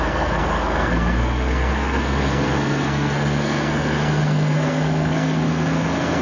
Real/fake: fake